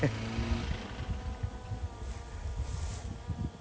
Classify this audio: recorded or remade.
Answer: recorded